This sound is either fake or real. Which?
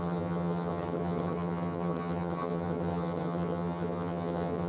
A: fake